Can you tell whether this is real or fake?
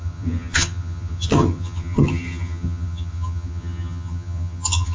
fake